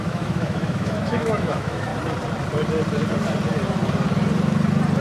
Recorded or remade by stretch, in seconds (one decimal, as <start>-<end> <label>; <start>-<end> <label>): 0.0-1.9 remade; 1.9-5.0 recorded